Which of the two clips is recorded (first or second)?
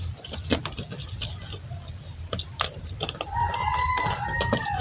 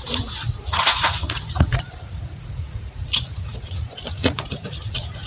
first